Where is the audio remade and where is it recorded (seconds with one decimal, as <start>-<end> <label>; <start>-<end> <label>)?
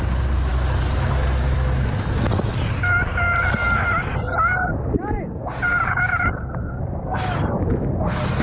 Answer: 0.0-3.6 recorded; 3.6-7.6 remade; 7.6-8.4 recorded